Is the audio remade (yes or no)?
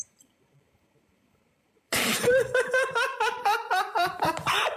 yes